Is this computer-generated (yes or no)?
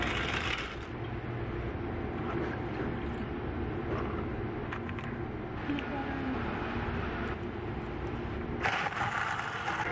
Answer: no